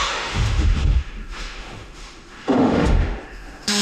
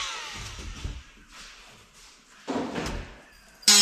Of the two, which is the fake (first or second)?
first